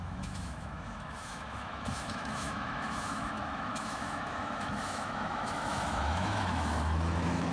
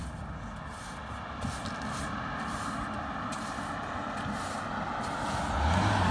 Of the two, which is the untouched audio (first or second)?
second